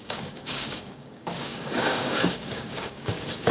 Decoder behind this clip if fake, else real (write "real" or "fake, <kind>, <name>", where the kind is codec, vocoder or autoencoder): fake, codec, DAC